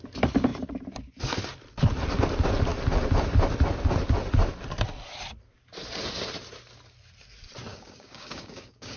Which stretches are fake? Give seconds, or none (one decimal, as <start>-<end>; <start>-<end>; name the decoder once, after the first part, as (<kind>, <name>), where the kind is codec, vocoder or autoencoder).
7.7-9.0 (codec, DAC)